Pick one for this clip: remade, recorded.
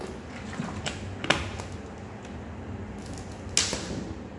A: recorded